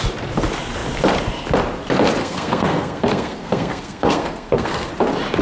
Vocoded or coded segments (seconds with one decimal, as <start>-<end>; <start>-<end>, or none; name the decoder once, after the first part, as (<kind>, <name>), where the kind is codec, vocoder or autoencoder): 2.2-4.9 (codec, SNAC)